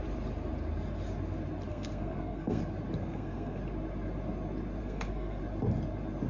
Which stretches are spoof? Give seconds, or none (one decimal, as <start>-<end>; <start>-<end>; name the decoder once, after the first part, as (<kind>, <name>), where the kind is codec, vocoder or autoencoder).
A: 1.7-2.6 (codec, SNAC); 3.0-3.6; 4.8-5.4